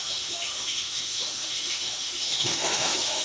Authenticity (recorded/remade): remade